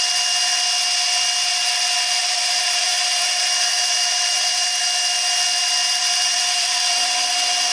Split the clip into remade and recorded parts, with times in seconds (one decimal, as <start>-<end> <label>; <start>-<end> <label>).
0.0-2.2 recorded; 2.2-4.8 remade; 4.8-6.0 recorded; 6.0-7.3 remade; 7.3-7.7 recorded